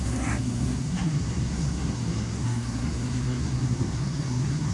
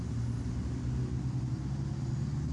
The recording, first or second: second